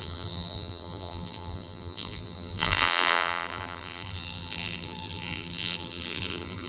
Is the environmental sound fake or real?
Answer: fake